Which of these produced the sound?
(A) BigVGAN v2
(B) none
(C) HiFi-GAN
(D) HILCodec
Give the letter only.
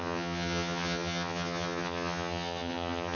C